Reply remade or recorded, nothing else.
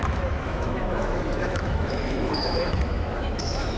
remade